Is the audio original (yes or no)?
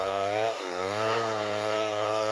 no